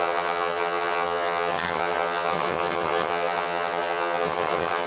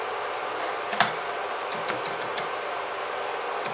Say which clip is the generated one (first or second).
first